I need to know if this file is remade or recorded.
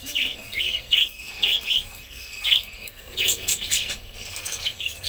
remade